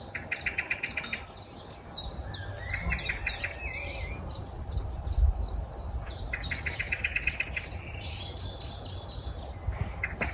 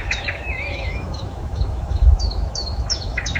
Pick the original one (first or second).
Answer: first